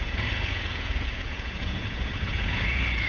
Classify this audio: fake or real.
fake